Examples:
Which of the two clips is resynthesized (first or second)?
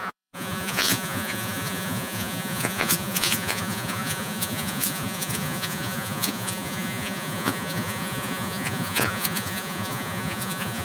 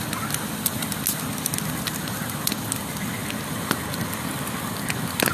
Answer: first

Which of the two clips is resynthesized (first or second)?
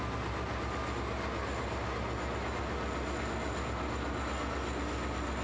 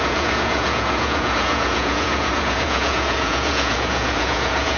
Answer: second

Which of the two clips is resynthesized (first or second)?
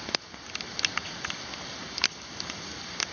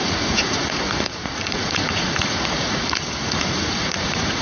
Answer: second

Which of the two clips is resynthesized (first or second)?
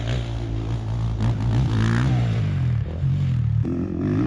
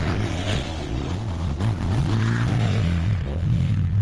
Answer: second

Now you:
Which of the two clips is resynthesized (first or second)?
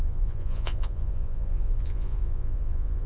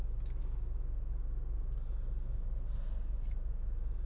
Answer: first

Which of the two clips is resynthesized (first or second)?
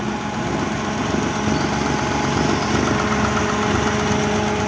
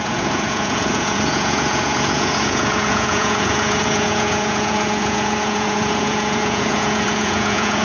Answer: second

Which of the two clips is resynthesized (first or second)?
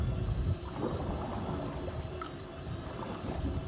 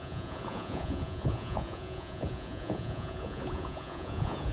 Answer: second